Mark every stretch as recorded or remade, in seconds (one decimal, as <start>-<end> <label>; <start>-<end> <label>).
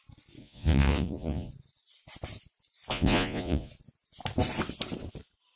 0.0-0.4 recorded; 0.4-1.5 remade; 1.5-2.9 recorded; 2.9-3.7 remade; 3.7-5.6 recorded